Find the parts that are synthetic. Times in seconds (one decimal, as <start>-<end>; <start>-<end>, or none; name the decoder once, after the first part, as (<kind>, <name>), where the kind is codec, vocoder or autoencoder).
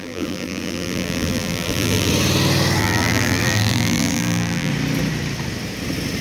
0.0-2.1 (vocoder, BigVGAN v2); 2.8-4.7